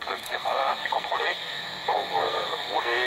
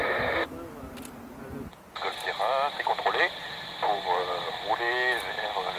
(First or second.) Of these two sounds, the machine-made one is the first